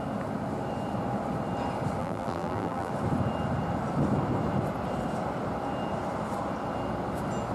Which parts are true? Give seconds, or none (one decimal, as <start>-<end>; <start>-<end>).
0.0-2.0; 2.9-7.5